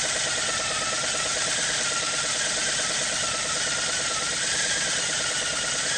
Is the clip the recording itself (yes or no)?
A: yes